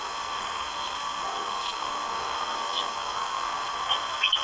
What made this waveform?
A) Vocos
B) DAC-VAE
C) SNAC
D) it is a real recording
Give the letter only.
C